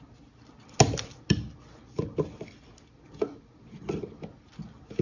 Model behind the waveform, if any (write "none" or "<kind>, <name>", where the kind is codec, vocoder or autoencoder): none